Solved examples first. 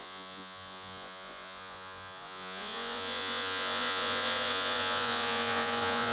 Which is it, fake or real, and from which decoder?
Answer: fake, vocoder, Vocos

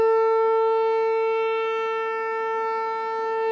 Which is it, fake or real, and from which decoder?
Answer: real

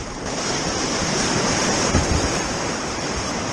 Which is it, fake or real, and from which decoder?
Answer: fake, vocoder, BigVGAN v2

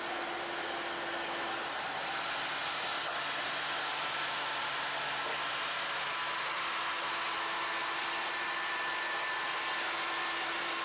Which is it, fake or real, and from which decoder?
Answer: real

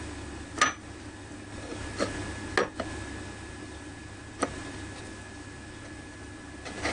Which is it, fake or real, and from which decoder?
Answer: real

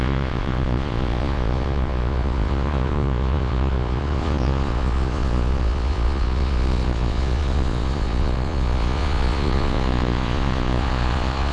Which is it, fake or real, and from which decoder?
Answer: fake, vocoder, Vocos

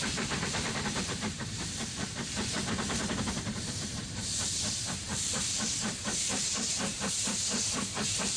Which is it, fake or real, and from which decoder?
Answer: fake, vocoder, BigVGAN v2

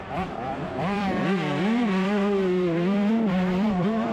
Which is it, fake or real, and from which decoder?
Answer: fake, vocoder, BigVGAN v2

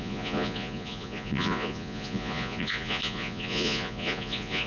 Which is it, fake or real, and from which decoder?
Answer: fake, vocoder, Vocos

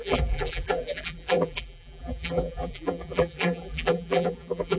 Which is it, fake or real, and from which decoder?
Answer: fake, vocoder, BigVGAN v2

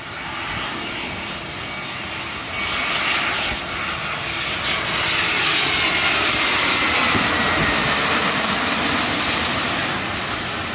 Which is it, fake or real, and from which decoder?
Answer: real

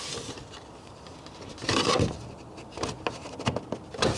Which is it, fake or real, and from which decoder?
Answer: real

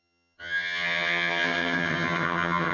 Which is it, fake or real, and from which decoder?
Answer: fake, vocoder, HiFi-GAN